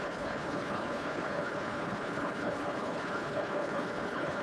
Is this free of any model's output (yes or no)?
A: no